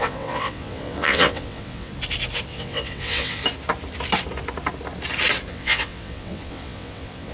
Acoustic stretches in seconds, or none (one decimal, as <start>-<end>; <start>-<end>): 1.9-2.5; 3.4-5.5